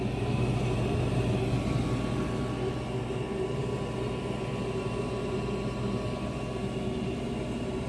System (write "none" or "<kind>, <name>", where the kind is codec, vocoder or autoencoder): none